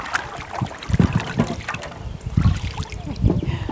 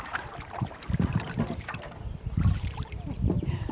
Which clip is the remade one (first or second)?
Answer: second